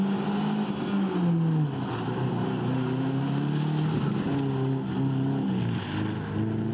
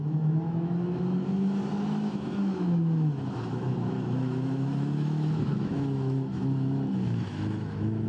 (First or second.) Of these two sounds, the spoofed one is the second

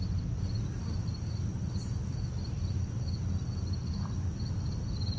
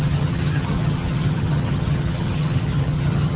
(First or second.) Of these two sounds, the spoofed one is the second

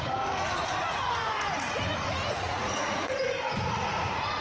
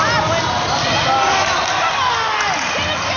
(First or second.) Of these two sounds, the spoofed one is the first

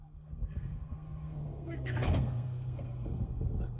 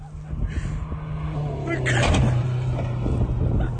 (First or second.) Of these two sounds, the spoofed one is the first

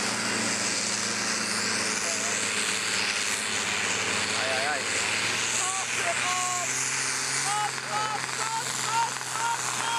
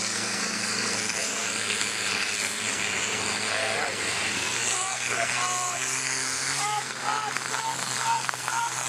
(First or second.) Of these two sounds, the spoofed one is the second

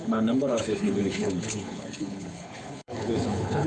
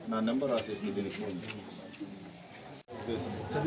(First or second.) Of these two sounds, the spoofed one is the first